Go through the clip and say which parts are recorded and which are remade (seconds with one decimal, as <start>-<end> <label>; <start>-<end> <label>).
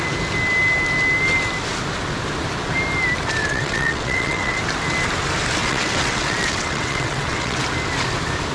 0.0-3.4 recorded; 3.4-4.6 remade; 4.6-5.6 recorded; 5.6-7.6 remade; 7.6-8.5 recorded